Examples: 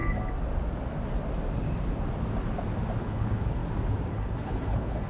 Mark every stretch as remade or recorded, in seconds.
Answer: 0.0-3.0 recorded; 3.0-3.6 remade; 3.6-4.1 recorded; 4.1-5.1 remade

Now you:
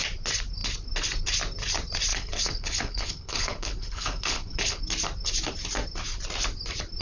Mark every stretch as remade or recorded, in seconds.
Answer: 0.0-2.1 recorded; 2.1-4.8 remade; 4.8-7.0 recorded

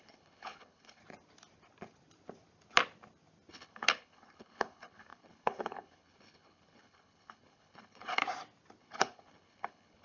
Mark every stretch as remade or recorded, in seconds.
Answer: 0.0-1.0 remade; 1.0-3.5 recorded; 3.5-8.2 remade; 8.2-8.8 recorded; 8.8-10.0 remade

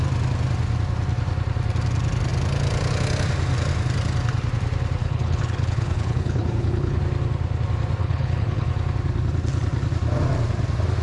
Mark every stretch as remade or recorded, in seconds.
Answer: 0.0-5.0 recorded; 5.0-7.0 remade; 7.0-8.0 recorded; 8.0-8.7 remade; 8.7-11.0 recorded

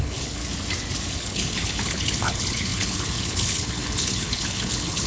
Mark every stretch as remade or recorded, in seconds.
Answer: 0.0-0.4 remade; 0.4-1.1 recorded; 1.1-5.1 remade

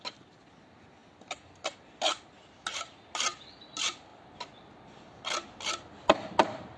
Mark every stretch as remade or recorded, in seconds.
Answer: 0.0-6.8 recorded